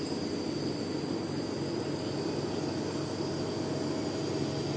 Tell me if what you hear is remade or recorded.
recorded